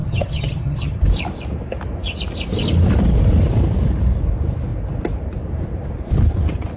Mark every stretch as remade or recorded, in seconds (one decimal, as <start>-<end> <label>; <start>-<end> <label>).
0.0-1.0 remade; 1.0-6.8 recorded